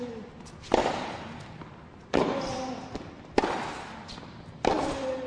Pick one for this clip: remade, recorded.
recorded